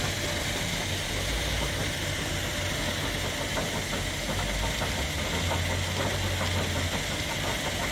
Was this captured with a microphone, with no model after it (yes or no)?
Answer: yes